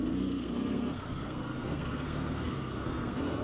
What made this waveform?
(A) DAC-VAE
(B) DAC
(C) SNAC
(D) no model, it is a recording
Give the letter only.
C